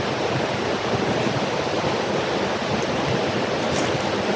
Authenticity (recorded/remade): recorded